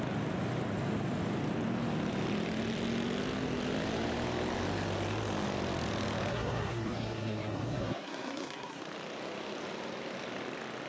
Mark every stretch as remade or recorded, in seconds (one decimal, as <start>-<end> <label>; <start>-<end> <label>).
0.0-6.3 recorded; 6.3-8.8 remade; 8.8-10.9 recorded